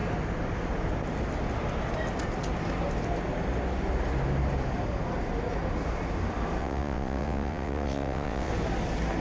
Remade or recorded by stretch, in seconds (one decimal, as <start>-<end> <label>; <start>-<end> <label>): 0.0-6.6 recorded; 6.6-8.5 remade; 8.5-9.2 recorded